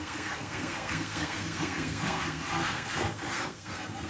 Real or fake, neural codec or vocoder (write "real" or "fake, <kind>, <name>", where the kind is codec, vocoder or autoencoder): fake, codec, SNAC